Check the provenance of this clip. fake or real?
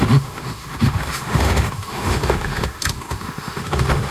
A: fake